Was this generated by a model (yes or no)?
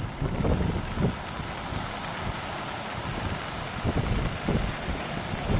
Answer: no